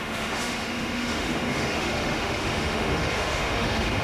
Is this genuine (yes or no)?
no